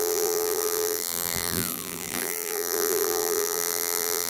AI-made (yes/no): yes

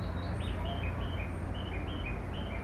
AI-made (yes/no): no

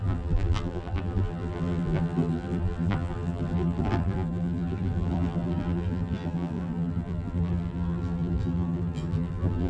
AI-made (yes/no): yes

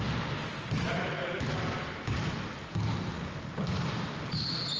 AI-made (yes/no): no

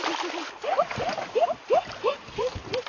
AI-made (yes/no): no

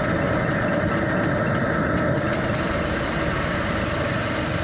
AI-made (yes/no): no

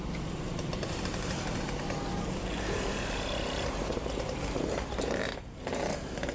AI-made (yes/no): yes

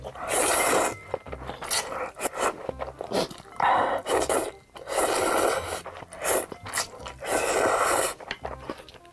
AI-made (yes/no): yes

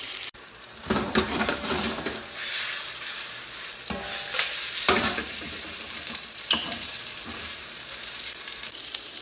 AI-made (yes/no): yes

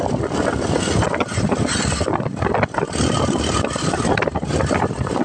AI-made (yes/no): yes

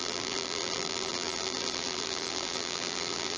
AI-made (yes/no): yes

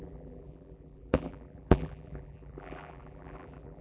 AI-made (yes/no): yes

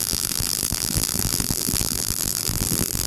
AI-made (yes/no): yes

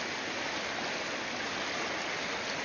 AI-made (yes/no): no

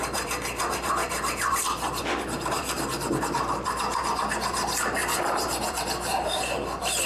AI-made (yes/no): yes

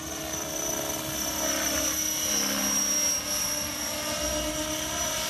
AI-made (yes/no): no